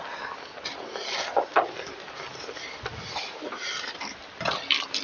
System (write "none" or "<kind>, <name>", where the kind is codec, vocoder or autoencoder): none